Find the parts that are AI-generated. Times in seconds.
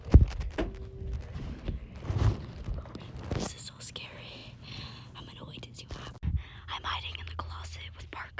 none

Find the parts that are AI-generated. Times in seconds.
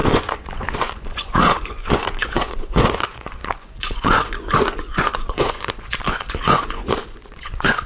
0.0-7.9 (vocoder, Vocos)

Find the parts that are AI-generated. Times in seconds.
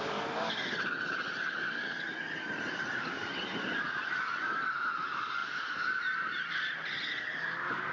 none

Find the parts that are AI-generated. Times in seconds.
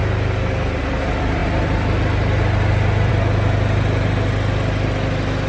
none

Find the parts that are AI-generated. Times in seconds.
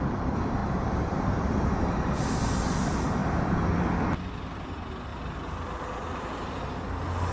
0.6-1.2 (vocoder, BigVGAN v2)